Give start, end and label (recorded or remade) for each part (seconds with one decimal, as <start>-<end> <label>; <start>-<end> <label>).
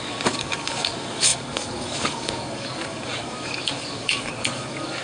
0.0-5.0 remade